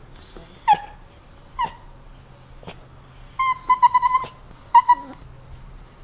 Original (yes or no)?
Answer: yes